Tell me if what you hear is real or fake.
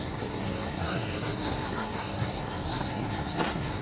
fake